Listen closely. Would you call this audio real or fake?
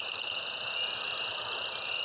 real